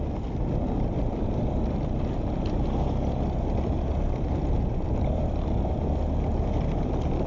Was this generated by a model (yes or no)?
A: no